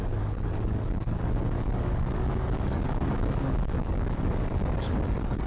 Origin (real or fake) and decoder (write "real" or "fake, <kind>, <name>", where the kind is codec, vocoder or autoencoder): fake, codec, DAC